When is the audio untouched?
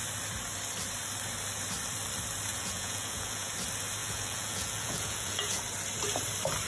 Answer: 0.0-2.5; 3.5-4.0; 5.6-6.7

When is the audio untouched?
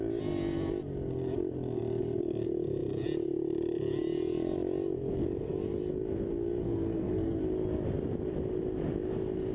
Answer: 0.0-6.6; 7.4-9.5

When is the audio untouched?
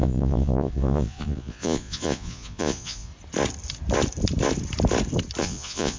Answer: 3.1-5.4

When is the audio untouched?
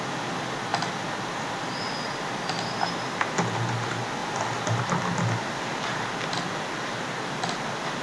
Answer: 0.0-8.0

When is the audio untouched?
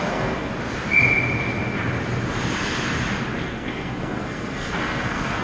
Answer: 0.5-3.4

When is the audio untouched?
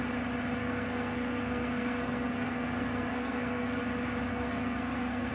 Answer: 0.0-0.6; 3.8-4.3